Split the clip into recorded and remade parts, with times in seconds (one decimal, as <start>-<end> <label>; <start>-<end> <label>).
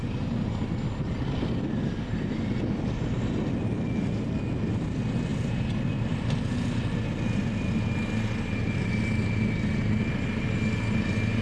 0.0-11.4 recorded